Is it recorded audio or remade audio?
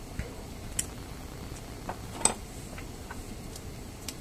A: recorded